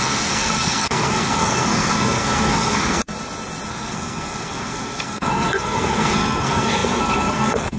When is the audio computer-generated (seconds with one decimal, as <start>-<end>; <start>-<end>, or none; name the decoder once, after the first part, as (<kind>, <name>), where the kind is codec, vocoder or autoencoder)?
0.0-3.0 (codec, SNAC); 3.7-7.8